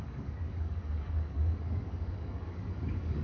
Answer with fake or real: fake